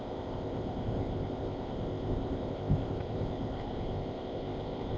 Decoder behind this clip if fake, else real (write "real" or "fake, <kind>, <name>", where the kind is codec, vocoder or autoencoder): fake, codec, ZipCodec